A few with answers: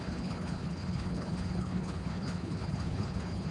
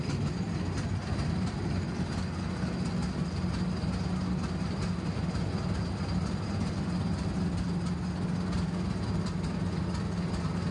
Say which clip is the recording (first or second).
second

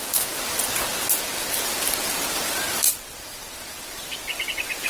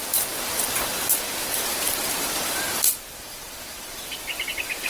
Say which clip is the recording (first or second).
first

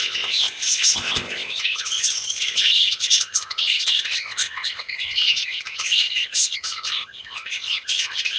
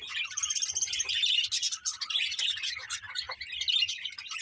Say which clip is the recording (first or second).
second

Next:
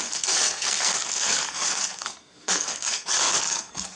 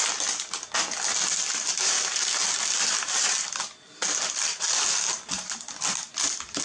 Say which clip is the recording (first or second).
second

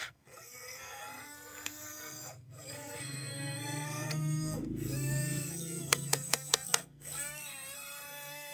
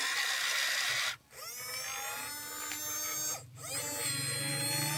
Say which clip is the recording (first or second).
second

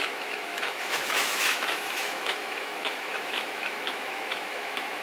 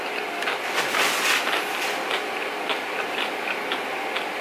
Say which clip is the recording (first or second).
second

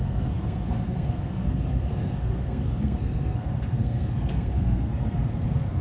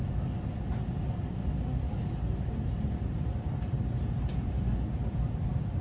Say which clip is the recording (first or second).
second